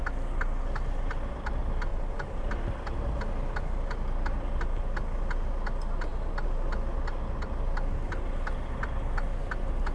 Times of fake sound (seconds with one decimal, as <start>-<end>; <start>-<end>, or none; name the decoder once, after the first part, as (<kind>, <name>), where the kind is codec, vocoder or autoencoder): 1.9-2.5 (vocoder, BigVGAN v2)

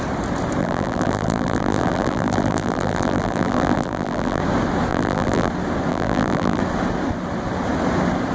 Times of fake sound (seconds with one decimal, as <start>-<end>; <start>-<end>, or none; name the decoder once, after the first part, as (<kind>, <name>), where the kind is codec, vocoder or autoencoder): 0.6-4.4 (vocoder, BigVGAN v2); 4.9-5.5; 5.9-6.6